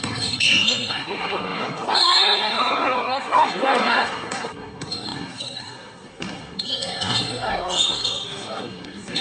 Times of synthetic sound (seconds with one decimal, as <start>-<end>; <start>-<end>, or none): 0.0-9.2